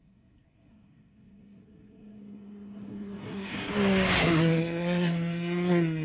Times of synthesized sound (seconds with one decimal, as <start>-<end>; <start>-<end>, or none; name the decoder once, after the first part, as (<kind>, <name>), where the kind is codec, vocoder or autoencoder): 0.0-3.7 (codec, SNAC); 4.2-6.0